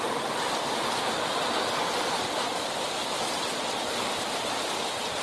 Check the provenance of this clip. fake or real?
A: real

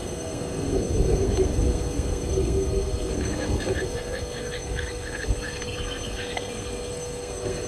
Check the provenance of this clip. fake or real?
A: fake